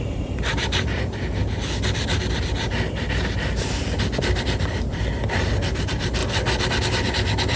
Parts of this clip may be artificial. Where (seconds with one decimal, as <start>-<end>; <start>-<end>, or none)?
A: 0.0-1.4; 5.7-6.2